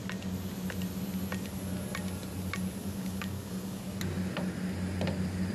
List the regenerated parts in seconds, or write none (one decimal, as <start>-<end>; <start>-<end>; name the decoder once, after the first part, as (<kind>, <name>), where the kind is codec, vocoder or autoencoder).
2.8-3.8 (codec, DAC)